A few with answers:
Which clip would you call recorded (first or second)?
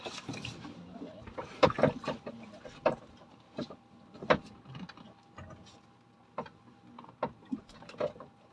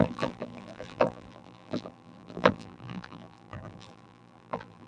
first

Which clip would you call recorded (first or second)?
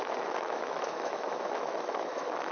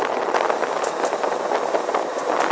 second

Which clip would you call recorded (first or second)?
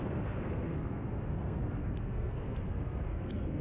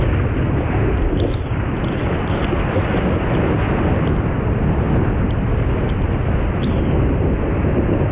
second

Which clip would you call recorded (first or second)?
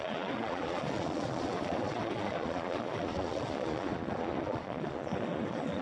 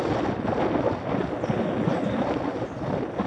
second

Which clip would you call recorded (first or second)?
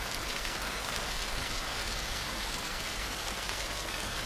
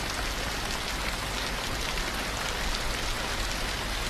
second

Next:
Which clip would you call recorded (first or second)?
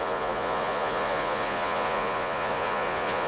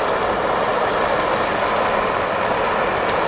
second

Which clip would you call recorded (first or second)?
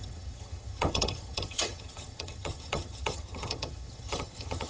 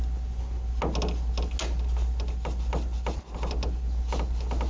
second